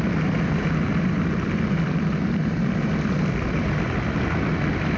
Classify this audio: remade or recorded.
remade